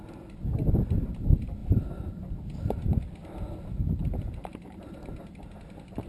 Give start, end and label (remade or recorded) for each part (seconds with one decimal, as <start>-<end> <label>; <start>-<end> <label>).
0.0-1.6 recorded; 1.6-2.1 remade; 2.1-4.0 recorded; 4.0-5.1 remade; 5.1-6.1 recorded